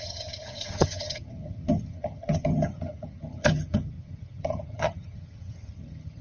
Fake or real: fake